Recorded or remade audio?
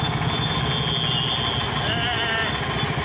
recorded